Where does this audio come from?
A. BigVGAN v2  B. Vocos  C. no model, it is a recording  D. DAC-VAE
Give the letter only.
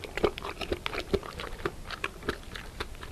A